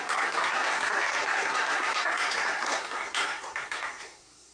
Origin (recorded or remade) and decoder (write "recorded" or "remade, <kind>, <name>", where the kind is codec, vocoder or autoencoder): remade, codec, SNAC